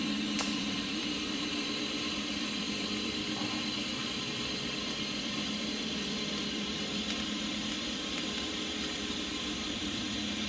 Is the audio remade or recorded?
remade